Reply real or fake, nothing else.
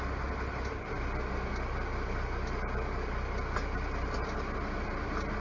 real